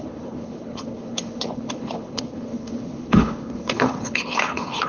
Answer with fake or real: fake